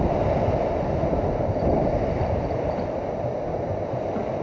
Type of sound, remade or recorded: recorded